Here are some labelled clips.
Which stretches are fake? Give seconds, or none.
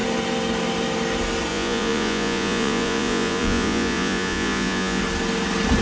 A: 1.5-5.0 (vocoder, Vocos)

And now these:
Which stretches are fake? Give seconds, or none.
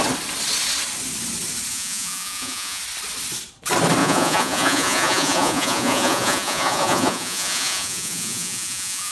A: 1.7-2.8 (vocoder, Vocos); 4.0-9.1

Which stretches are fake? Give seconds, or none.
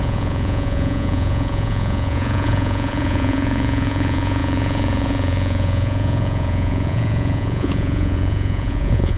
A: 0.0-9.2 (vocoder, Vocos)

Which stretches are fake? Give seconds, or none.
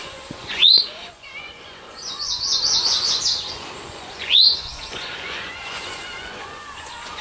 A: 0.0-7.2 (vocoder, Vocos)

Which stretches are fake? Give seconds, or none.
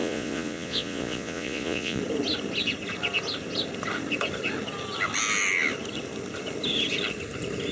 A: 0.0-2.0 (vocoder, Vocos)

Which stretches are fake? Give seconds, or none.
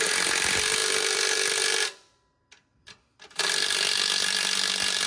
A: none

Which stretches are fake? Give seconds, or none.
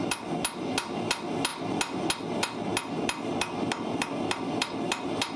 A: none